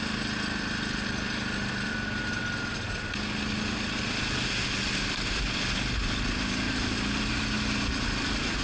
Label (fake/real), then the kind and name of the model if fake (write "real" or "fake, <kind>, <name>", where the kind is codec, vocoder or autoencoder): real